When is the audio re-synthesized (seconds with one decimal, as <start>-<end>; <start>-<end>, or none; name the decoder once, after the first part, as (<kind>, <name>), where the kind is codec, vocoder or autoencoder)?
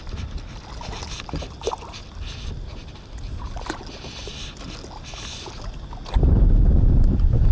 none